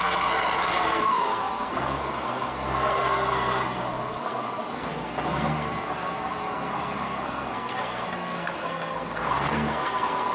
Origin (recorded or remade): remade